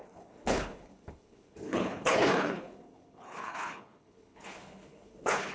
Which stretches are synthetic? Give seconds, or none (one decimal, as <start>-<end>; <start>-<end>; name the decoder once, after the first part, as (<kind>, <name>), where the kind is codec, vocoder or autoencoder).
0.0-5.5 (codec, HILCodec)